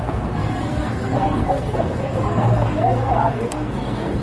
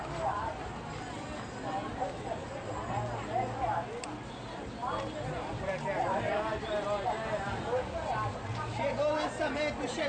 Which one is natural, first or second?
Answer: second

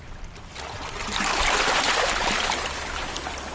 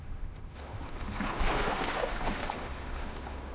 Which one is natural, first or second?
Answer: first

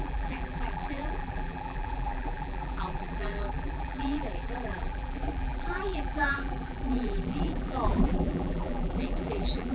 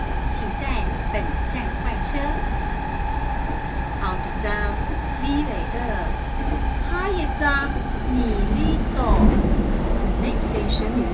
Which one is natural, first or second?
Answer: second